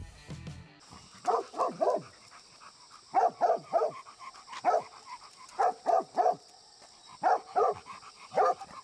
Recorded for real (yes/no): yes